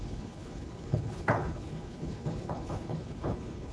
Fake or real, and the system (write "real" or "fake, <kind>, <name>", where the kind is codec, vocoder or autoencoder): fake, codec, HILCodec